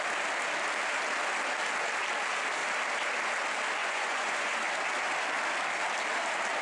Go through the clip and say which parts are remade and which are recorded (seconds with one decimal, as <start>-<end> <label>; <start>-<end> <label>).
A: 0.0-3.8 recorded; 3.8-4.5 remade; 4.5-6.6 recorded